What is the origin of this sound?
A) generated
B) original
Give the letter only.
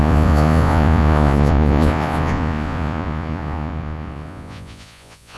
A